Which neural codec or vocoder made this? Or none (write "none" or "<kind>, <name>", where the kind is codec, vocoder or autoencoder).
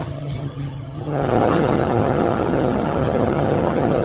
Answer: vocoder, HiFi-GAN